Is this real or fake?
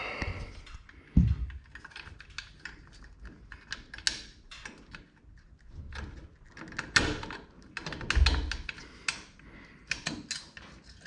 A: real